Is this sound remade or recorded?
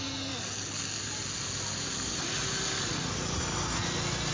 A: recorded